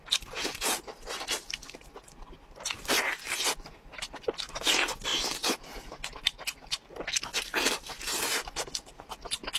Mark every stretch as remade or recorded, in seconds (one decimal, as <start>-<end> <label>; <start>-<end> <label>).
0.0-9.6 recorded